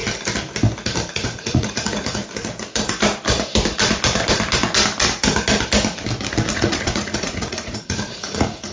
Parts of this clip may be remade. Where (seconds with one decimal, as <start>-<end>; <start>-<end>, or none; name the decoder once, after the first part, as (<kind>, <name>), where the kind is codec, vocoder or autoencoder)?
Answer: 1.1-2.2 (vocoder, Vocos); 6.5-8.7